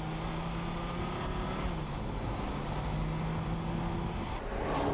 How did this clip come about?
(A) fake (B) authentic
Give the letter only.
B